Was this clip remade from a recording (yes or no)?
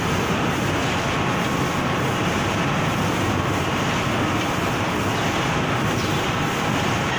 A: no